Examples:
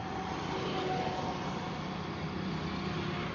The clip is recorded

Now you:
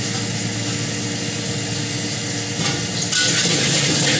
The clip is recorded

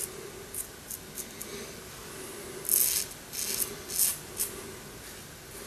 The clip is recorded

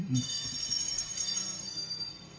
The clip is remade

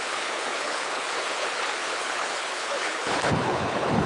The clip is remade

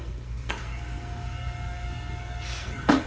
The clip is remade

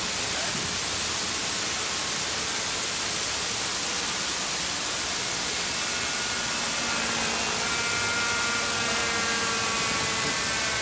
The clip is recorded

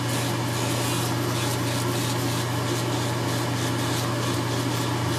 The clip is recorded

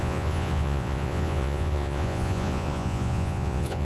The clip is remade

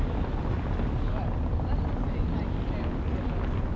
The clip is recorded